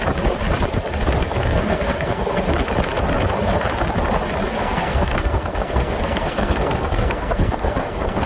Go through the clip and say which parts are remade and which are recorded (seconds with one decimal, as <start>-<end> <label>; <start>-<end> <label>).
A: 0.0-1.2 recorded; 1.2-2.4 remade; 2.4-4.6 recorded; 4.6-8.3 remade